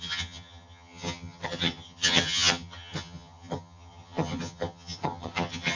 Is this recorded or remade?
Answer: remade